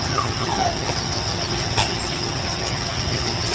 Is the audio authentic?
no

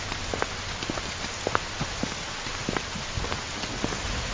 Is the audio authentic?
yes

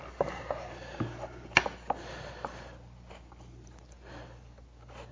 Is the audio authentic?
yes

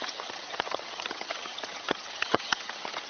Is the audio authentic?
no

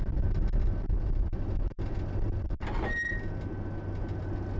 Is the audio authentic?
yes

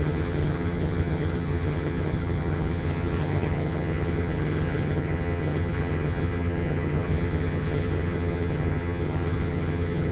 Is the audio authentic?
no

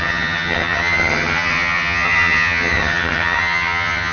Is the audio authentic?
no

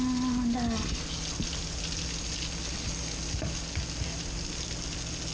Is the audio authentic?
yes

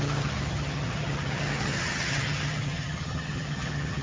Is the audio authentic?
no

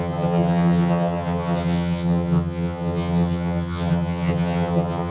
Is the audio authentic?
no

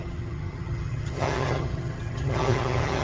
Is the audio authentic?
no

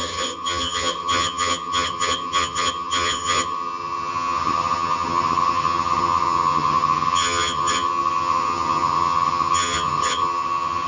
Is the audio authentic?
no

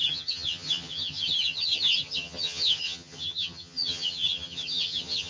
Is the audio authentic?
no